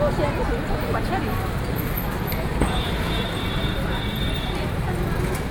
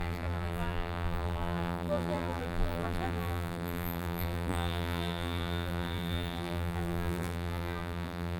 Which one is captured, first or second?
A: first